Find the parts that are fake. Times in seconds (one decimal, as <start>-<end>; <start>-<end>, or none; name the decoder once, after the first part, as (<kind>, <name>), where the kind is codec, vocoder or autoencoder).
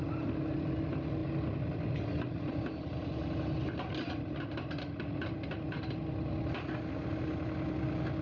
none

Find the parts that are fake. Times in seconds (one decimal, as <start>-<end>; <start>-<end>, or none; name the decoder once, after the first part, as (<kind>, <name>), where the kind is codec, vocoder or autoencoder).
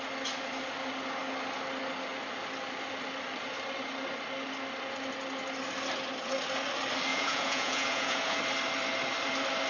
7.1-8.4 (vocoder, Vocos)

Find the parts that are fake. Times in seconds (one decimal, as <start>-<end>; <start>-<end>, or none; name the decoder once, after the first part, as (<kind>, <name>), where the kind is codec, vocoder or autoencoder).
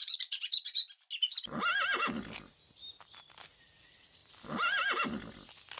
0.0-0.8 (vocoder, Vocos); 3.5-4.2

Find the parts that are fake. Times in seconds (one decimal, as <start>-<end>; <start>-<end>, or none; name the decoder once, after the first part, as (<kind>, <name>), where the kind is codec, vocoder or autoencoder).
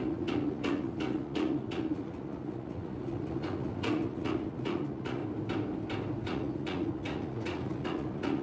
0.0-5.2 (vocoder, Vocos); 6.2-8.4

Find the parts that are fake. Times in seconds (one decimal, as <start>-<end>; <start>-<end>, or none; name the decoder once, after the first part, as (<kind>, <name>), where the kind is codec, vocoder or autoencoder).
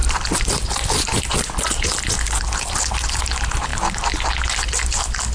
none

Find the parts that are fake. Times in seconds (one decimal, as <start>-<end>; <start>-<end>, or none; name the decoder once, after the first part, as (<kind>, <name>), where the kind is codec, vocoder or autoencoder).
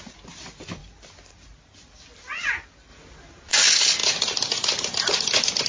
none